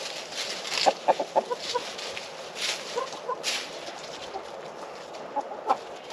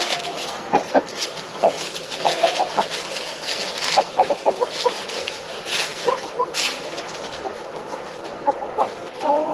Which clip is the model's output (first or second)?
second